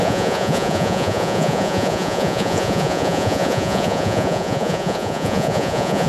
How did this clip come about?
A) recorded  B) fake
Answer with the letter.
B